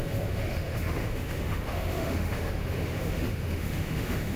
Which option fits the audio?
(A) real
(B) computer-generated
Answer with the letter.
B